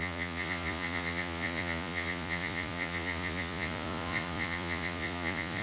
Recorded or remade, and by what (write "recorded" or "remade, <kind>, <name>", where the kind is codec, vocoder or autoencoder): remade, vocoder, Vocos